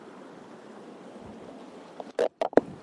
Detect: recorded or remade recorded